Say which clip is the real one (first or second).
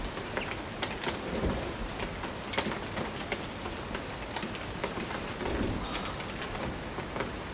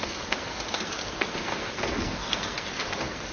first